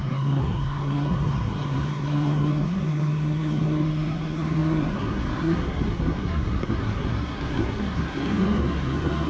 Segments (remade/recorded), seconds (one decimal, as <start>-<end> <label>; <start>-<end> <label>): 0.0-9.3 remade